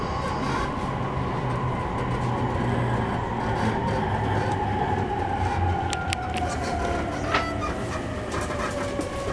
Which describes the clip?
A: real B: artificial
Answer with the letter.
A